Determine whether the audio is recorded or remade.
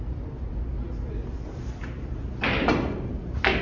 recorded